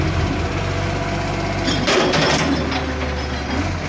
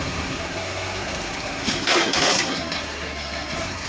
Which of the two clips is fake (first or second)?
second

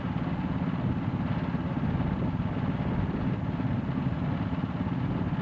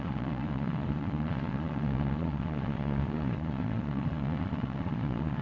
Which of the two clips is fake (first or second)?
second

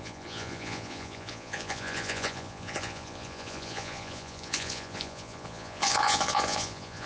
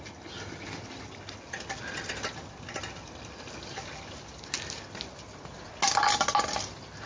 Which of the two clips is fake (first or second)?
first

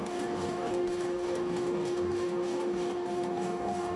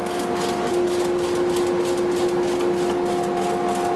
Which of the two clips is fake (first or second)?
first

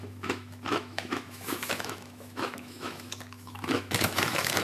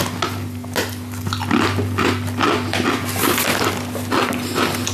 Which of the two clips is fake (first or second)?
first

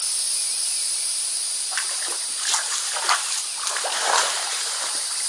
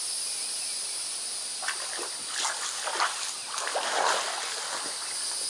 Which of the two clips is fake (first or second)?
first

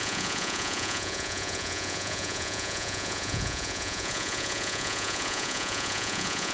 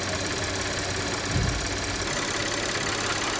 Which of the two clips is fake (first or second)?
first